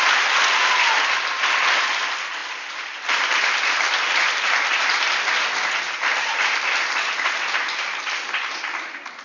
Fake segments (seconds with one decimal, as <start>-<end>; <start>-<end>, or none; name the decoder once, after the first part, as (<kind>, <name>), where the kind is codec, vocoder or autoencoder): none